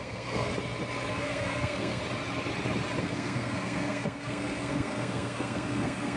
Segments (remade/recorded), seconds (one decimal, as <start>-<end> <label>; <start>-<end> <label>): 0.0-0.5 remade; 0.5-1.1 recorded; 1.1-2.0 remade; 2.0-3.0 recorded; 3.0-6.2 remade